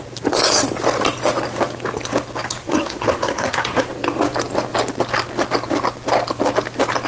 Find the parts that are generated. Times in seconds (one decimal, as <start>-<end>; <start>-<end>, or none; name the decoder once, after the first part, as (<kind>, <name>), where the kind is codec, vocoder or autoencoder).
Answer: 2.6-3.9 (codec, SNAC)